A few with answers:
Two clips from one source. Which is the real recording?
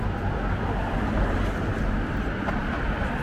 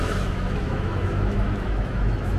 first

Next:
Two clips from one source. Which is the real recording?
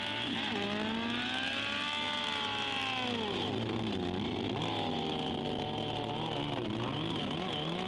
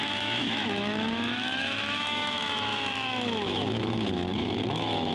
first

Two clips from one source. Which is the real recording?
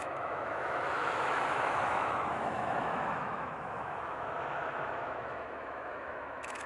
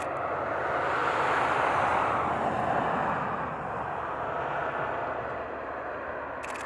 second